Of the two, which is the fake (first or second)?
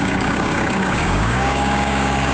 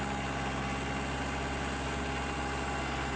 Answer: first